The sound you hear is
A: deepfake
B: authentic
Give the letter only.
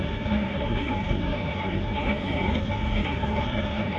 A